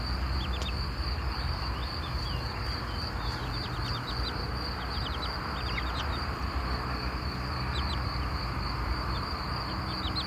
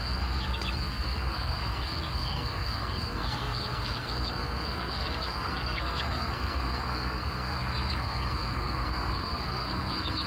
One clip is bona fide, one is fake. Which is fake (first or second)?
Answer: second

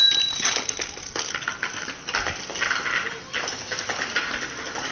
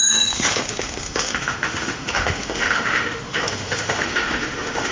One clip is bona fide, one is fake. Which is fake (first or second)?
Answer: second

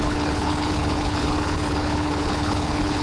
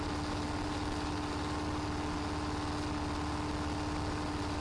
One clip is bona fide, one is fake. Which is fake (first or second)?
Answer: first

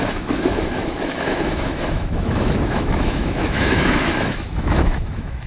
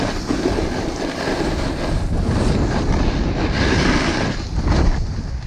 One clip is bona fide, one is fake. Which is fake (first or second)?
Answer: first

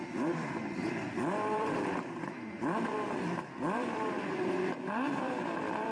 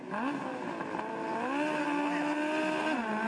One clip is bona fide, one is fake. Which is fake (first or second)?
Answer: first